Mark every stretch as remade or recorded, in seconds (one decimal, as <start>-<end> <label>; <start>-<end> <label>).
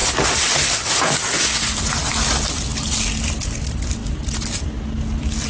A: 0.0-5.5 recorded